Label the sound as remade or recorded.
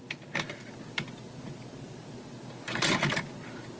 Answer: recorded